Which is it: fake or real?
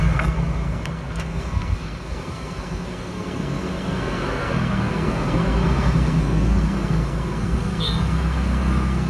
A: fake